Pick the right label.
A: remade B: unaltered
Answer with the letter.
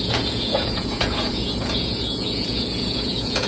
A